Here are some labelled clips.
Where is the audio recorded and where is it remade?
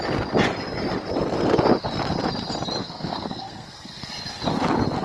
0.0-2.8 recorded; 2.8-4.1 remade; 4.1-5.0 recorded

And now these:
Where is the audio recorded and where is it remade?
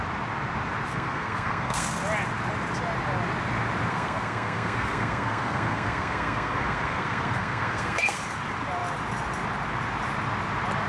0.0-0.9 recorded; 0.9-2.0 remade; 2.0-3.9 recorded; 3.9-8.2 remade; 8.2-10.9 recorded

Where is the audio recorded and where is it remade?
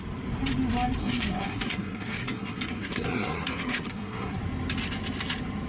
0.0-1.0 recorded; 1.0-4.4 remade; 4.4-5.7 recorded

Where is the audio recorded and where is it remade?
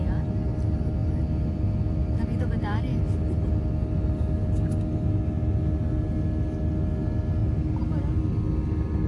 0.0-9.1 recorded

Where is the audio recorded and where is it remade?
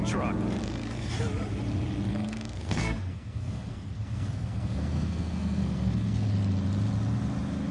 0.0-0.6 recorded; 0.6-1.1 remade; 1.1-2.1 recorded; 2.1-6.3 remade; 6.3-7.7 recorded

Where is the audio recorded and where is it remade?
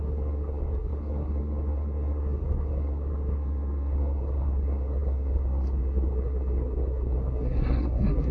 0.0-8.3 remade